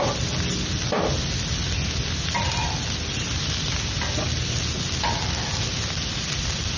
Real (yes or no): yes